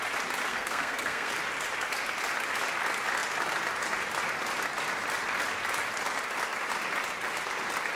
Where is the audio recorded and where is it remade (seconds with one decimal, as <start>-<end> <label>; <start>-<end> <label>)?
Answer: 0.0-0.5 recorded; 0.5-1.3 remade; 1.3-8.0 recorded